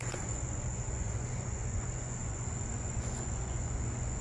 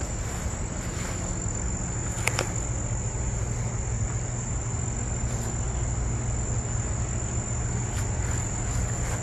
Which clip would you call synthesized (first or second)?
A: first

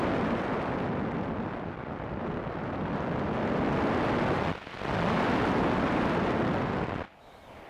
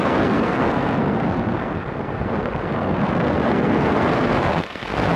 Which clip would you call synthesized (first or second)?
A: second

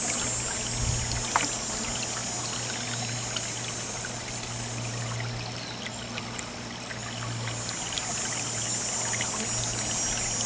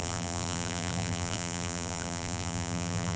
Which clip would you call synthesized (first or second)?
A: second